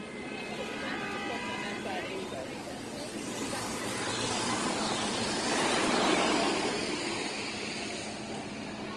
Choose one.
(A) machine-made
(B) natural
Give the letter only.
B